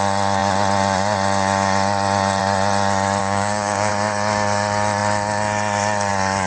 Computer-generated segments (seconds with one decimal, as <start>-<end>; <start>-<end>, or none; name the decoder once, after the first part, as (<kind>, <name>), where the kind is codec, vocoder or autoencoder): 3.2-3.9 (codec, DAC)